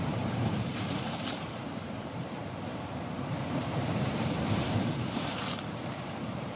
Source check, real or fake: fake